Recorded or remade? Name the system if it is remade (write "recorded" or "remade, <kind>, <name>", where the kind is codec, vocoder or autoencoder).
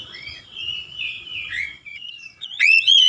remade, vocoder, Vocos